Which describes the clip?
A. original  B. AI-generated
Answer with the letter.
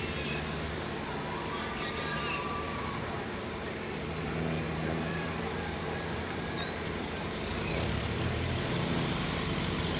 B